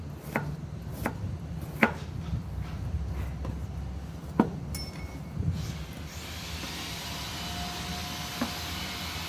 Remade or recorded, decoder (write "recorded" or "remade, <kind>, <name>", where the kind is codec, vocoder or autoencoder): recorded